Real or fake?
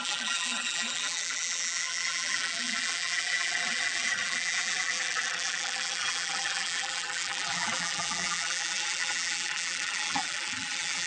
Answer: fake